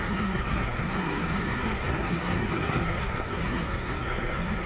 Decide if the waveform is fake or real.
fake